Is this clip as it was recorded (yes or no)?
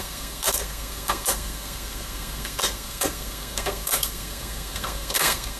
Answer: no